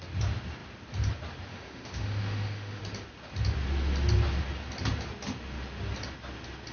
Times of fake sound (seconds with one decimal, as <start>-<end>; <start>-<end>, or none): 1.5-2.8